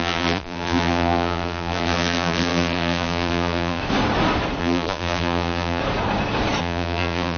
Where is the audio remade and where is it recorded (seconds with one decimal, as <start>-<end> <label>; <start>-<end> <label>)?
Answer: 0.0-3.8 remade; 3.8-4.6 recorded; 4.6-5.8 remade; 5.8-6.6 recorded; 6.6-7.4 remade